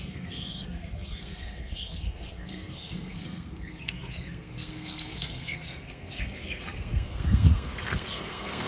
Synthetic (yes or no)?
yes